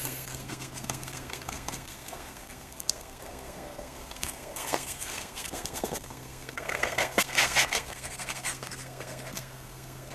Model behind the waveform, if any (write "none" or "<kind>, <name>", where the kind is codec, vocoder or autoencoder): codec, SNAC